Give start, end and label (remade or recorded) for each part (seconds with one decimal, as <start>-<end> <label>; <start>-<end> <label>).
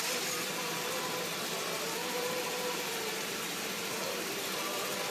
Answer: 0.0-2.0 recorded; 2.0-4.3 remade; 4.3-5.1 recorded